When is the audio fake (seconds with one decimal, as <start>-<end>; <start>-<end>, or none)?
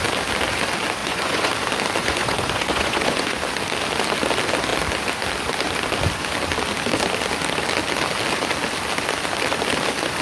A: 1.0-1.5; 2.0-3.4